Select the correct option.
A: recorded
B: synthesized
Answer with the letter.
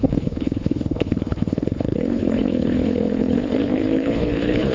B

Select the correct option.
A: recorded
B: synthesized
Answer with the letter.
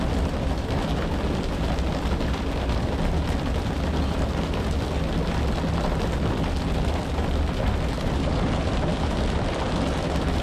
A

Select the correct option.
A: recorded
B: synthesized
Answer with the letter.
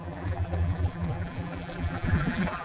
B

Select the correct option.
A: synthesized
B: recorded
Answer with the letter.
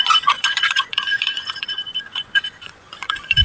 A